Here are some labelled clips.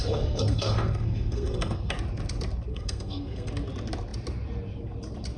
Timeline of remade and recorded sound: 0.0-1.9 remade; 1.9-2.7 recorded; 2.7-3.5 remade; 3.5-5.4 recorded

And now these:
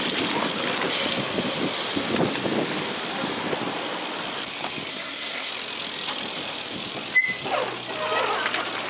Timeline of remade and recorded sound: 0.0-4.9 recorded; 4.9-5.5 remade; 5.5-8.9 recorded